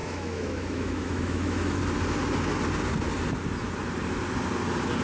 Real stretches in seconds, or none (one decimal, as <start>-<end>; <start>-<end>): 1.8-5.0